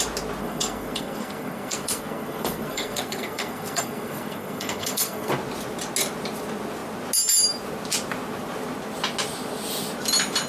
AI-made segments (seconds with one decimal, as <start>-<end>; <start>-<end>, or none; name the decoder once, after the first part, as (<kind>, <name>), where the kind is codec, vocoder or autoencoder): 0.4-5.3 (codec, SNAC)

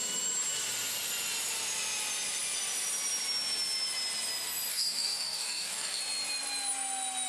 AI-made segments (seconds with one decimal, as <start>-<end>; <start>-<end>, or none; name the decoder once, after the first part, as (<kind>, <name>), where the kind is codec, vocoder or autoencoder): 4.7-6.0 (codec, DAC)

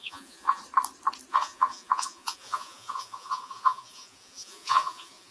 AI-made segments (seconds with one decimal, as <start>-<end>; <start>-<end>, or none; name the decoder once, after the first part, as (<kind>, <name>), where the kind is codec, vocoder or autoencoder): 0.0-0.6 (vocoder, Vocos); 1.3-5.3

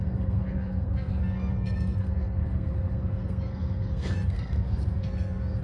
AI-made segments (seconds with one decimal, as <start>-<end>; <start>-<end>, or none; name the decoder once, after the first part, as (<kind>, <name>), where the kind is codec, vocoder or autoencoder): 0.0-5.6 (codec, SNAC)

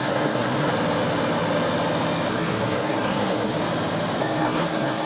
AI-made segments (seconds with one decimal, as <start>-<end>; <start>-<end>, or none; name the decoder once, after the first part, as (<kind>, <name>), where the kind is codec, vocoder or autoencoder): 0.0-0.7 (codec, SNAC); 2.3-3.6; 4.2-5.1